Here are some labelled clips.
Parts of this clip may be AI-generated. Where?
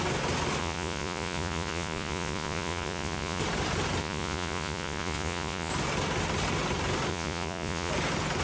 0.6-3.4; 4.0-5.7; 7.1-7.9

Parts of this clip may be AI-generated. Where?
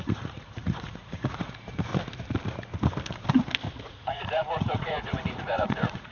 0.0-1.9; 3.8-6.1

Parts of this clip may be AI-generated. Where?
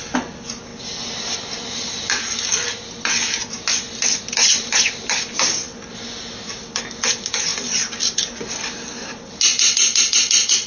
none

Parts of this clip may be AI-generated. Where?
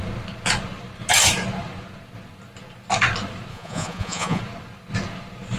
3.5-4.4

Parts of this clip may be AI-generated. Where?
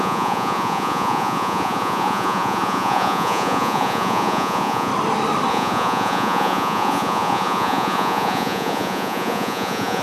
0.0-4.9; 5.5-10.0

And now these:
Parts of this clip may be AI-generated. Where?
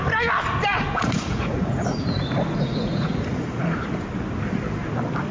0.7-3.9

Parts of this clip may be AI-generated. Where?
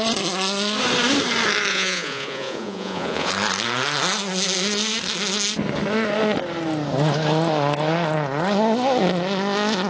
1.7-3.3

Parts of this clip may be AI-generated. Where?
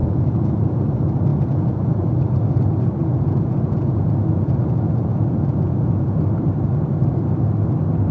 0.0-0.8; 1.3-2.1; 3.0-6.2